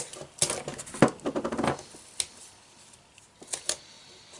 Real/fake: real